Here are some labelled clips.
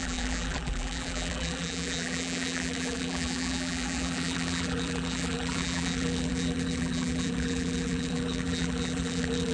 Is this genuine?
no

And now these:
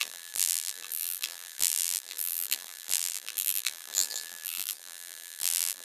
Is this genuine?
no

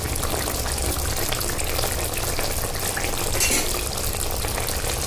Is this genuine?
yes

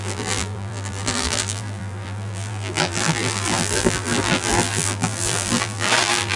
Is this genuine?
no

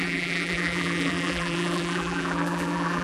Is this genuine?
no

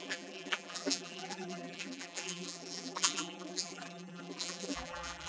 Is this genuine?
no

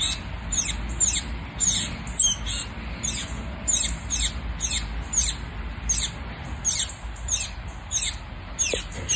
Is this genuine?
yes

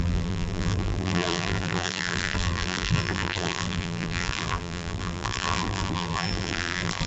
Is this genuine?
no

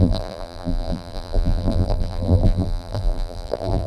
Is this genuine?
no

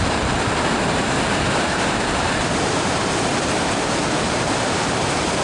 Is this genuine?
no